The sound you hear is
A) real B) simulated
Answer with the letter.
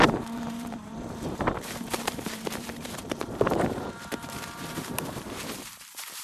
B